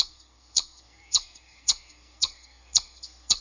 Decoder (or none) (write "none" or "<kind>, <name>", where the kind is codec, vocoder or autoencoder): codec, SNAC